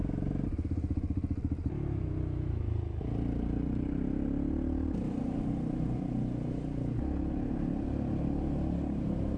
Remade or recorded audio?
recorded